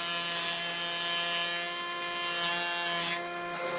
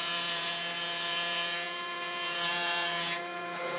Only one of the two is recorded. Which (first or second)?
first